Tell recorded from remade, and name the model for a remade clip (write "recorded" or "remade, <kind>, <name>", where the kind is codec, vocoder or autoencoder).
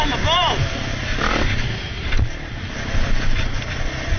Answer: recorded